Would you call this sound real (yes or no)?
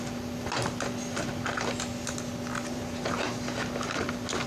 yes